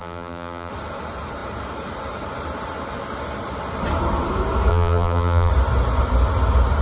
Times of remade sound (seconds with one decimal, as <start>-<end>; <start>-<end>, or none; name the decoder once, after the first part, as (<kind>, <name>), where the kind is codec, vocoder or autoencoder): 0.0-0.7 (vocoder, BigVGAN v2); 4.7-5.5